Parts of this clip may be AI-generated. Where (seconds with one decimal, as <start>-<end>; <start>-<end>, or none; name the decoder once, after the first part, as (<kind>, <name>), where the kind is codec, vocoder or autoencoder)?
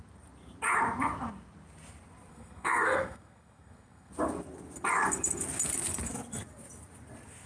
2.3-4.1 (codec, SNAC)